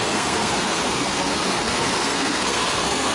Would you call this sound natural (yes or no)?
no